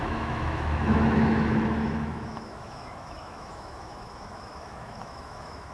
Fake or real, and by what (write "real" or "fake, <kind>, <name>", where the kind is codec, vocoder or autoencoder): fake, autoencoder, DAC-VAE